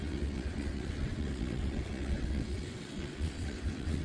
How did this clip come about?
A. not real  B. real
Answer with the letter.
A